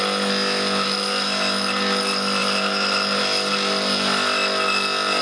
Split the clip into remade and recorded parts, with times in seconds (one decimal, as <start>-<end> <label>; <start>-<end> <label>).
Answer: 0.0-5.2 recorded